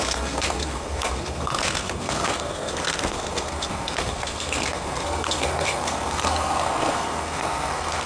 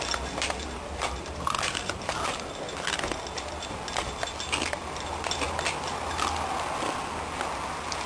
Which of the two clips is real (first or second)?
second